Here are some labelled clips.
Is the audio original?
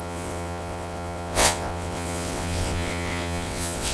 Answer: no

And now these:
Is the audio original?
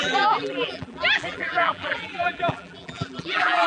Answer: no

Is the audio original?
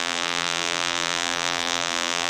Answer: no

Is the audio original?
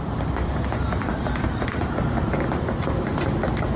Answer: yes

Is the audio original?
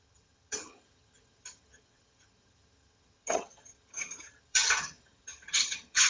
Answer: no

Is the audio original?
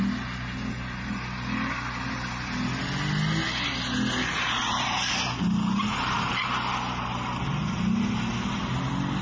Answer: yes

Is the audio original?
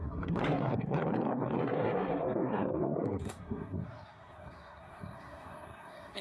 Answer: no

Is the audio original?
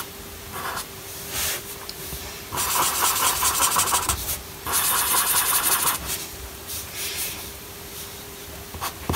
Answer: no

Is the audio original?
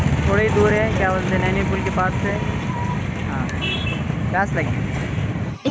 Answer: yes